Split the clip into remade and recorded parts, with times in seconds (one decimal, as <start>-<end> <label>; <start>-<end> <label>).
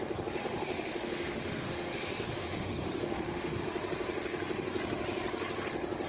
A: 0.0-0.4 recorded; 0.4-3.6 remade; 3.6-6.1 recorded